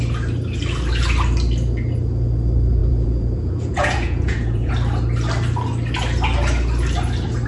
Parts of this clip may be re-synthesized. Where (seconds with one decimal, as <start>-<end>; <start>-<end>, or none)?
2.8-4.7